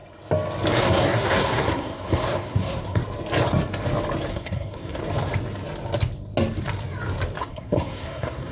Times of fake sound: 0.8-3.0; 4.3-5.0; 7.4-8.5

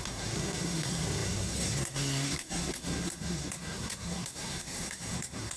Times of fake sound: 0.0-5.6

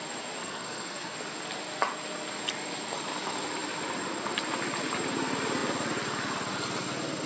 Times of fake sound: 0.4-1.2

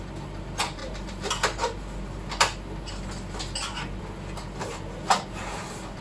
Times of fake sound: none